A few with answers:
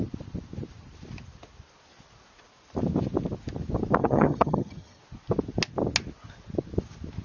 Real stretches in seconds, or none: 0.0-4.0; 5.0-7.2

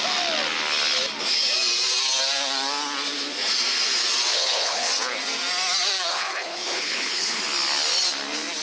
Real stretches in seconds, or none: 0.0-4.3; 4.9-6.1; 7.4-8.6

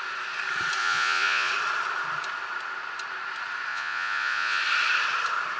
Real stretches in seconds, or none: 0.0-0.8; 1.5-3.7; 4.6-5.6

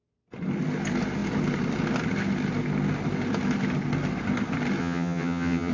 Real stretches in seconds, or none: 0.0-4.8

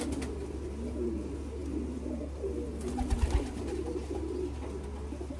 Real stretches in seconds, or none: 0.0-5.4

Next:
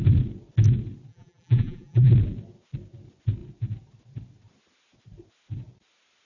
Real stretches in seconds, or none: 0.0-1.1; 2.1-6.2